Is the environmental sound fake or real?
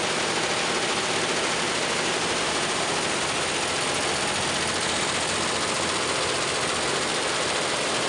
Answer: real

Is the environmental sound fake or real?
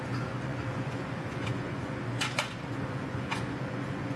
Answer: fake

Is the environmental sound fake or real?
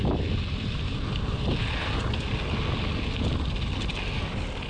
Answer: real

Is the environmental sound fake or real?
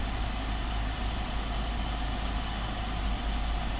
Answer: real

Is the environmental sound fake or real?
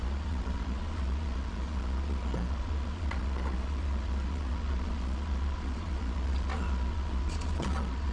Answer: fake